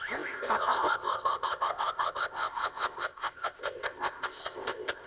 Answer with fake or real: fake